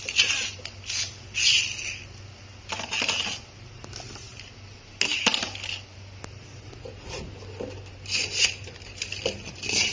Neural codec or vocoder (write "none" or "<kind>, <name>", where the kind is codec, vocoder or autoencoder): none